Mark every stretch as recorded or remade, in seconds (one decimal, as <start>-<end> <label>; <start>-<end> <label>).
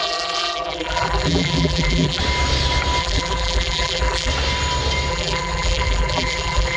0.0-2.2 remade; 2.2-3.0 recorded; 3.0-4.3 remade; 4.3-5.1 recorded; 5.1-6.8 remade